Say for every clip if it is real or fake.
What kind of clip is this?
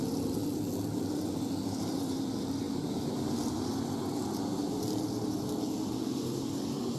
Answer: real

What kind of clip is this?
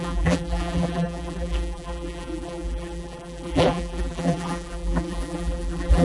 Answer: fake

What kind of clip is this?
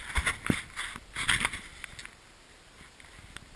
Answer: real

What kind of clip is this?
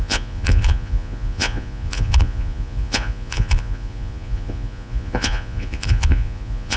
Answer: fake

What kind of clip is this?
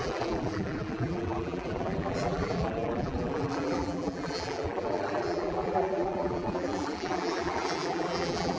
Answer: fake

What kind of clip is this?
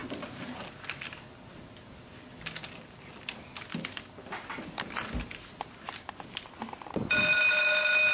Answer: real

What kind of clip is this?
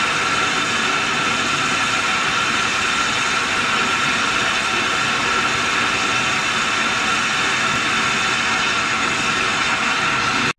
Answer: real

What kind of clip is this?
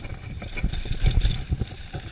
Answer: real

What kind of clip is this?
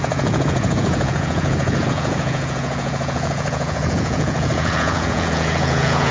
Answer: fake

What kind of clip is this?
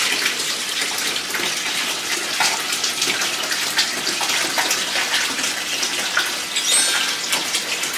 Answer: real